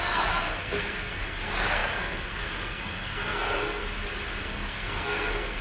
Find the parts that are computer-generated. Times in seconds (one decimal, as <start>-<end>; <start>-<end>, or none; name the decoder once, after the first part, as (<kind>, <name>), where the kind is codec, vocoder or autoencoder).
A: 0.0-3.8 (codec, SNAC); 4.4-5.6